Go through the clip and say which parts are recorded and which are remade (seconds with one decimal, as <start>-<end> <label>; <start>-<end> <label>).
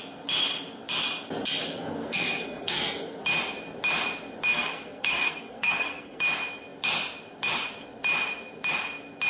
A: 0.0-1.6 recorded; 1.6-3.2 remade; 3.2-4.5 recorded; 4.5-6.2 remade; 6.2-9.3 recorded